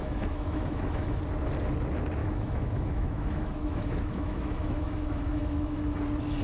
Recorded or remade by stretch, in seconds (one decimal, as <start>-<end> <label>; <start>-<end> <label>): 0.0-1.2 remade; 1.2-2.2 recorded; 2.2-6.0 remade; 6.0-6.4 recorded